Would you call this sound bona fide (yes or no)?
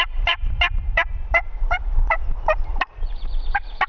no